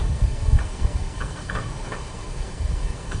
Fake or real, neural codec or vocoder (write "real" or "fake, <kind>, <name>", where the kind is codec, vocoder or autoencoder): fake, codec, SNAC